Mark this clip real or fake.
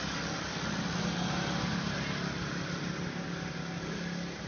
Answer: real